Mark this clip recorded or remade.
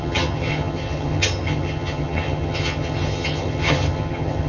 remade